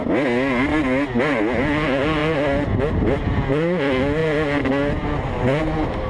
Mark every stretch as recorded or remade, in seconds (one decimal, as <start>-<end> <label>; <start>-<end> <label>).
0.0-6.1 recorded